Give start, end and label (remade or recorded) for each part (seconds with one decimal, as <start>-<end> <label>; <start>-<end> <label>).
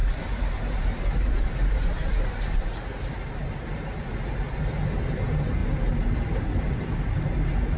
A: 0.0-7.8 recorded